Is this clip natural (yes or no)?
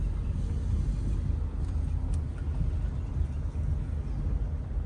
yes